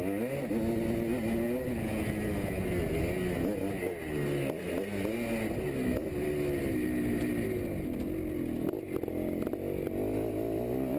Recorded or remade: recorded